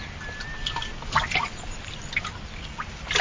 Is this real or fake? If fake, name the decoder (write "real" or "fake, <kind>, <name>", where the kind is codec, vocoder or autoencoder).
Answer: real